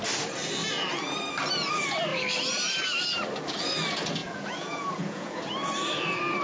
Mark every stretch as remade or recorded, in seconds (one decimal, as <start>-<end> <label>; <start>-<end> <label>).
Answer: 0.0-4.2 recorded; 4.2-5.5 remade; 5.5-6.4 recorded